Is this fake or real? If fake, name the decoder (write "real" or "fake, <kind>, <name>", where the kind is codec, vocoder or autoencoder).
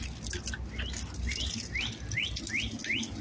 real